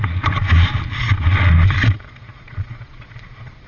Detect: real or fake fake